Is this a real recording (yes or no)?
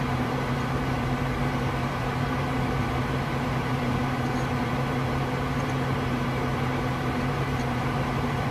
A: no